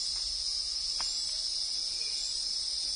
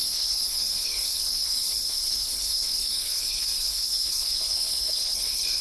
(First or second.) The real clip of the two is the first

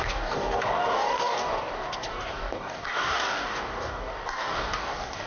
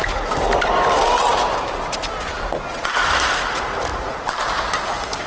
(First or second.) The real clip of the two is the second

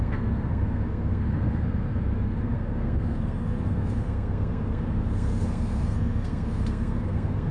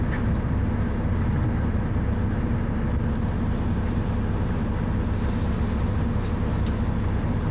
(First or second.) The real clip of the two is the second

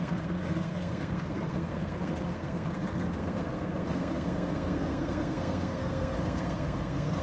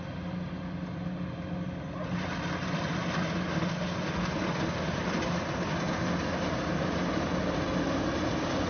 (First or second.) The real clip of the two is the second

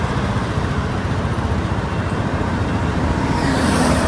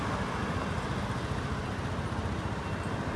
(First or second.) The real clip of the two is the second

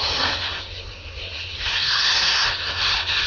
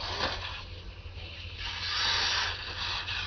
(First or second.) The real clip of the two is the second